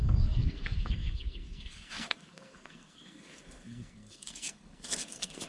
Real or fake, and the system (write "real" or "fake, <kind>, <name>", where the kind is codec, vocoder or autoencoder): fake, codec, SNAC